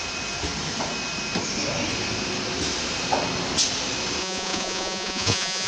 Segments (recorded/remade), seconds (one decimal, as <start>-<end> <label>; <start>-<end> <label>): 0.0-4.2 recorded; 4.2-5.7 remade